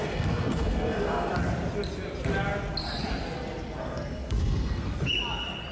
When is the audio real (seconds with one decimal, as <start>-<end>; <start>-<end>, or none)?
1.3-3.8; 5.1-5.7